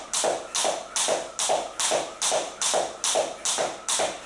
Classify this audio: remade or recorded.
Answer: recorded